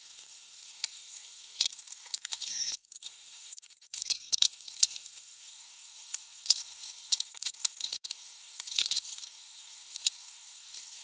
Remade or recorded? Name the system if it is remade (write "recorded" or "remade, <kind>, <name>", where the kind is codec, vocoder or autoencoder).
remade, codec, SNAC